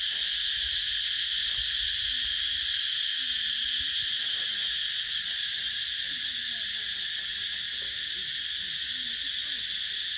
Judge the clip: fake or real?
real